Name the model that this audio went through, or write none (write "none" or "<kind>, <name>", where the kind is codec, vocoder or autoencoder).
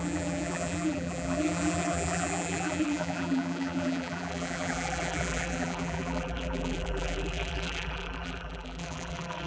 vocoder, BigVGAN v2